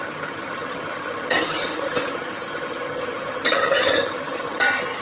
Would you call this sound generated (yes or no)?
yes